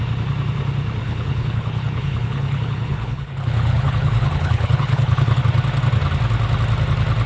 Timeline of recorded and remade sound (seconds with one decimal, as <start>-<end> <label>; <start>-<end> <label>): 0.0-1.0 recorded; 1.0-5.4 remade; 5.4-7.3 recorded